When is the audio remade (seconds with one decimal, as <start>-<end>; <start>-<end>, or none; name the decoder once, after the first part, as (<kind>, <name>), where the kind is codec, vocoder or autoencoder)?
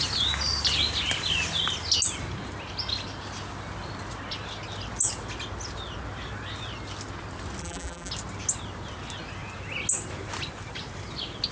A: 7.6-8.1 (vocoder, BigVGAN v2)